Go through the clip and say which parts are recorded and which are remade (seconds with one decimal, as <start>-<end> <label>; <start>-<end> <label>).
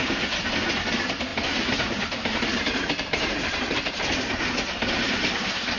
0.0-5.8 recorded